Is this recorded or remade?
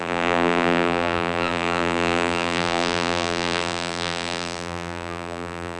remade